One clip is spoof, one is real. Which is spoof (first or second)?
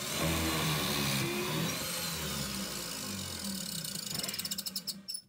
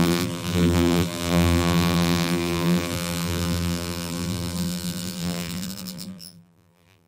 second